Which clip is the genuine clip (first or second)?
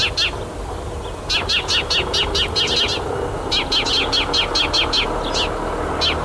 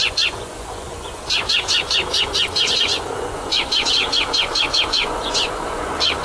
first